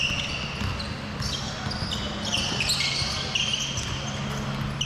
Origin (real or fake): real